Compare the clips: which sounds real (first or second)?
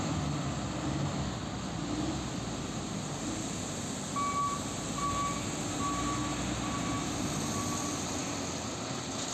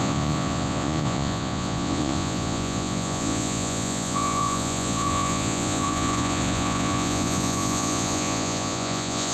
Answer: first